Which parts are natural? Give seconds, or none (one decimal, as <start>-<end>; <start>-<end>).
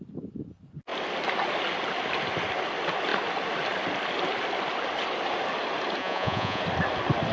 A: 0.0-6.0; 6.6-7.3